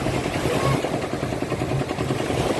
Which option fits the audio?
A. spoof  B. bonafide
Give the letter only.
B